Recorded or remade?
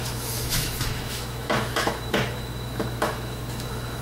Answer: remade